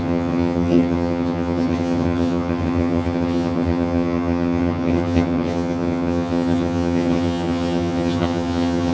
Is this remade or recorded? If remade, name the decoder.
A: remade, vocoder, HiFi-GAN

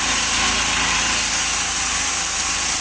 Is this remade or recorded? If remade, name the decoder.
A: recorded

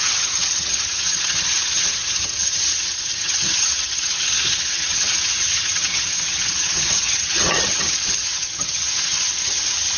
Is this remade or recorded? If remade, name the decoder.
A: remade, vocoder, HiFi-GAN